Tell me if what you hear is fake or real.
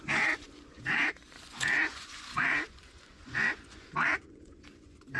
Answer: fake